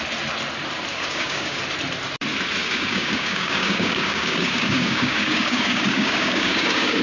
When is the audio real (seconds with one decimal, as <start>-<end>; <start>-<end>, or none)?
0.0-0.9; 1.6-2.6